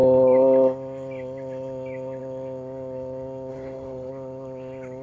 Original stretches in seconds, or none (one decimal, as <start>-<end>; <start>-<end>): 0.0-3.5; 4.1-5.0